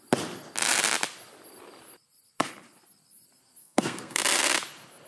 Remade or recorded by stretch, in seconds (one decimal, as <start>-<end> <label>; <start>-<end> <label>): 0.0-3.6 recorded; 3.6-4.2 remade; 4.2-5.1 recorded